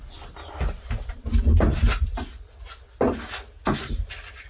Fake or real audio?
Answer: real